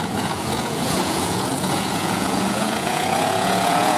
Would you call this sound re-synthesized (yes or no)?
yes